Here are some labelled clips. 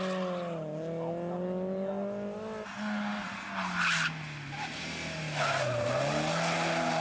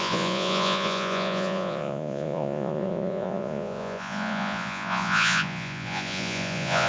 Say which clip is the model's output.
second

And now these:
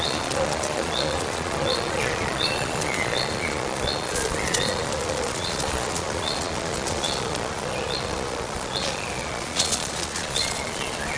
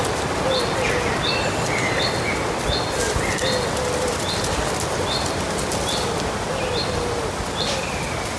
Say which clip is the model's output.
first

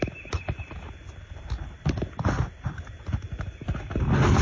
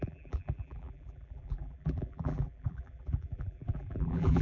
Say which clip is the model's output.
second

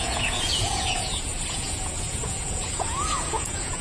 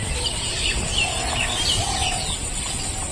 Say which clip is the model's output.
first